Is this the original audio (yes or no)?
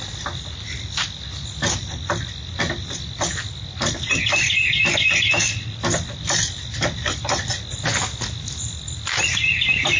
yes